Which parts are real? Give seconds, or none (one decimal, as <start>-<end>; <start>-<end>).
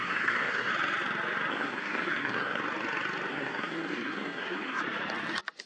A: 0.7-1.5; 2.6-3.3; 4.8-5.7